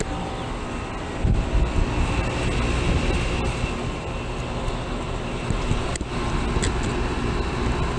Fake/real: real